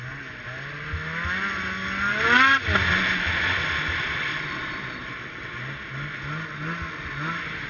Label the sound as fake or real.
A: real